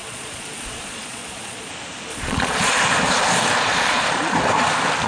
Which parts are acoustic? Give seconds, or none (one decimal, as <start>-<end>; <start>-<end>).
1.7-2.1; 2.7-3.7; 4.3-5.1